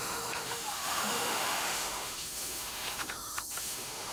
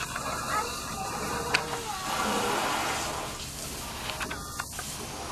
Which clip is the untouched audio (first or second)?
second